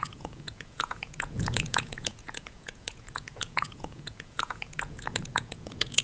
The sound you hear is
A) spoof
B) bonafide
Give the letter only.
A